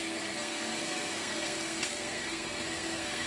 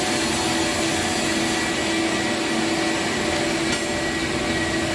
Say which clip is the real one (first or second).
second